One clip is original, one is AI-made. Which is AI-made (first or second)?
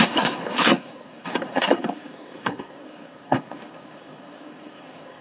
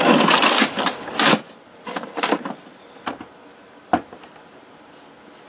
first